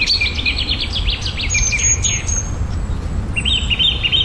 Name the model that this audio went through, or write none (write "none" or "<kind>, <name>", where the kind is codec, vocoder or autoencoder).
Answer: none